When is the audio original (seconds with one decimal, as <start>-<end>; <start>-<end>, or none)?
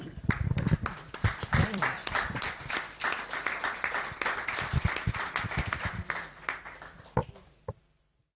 2.0-3.2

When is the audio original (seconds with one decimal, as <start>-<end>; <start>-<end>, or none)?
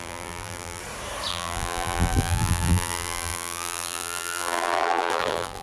0.8-1.3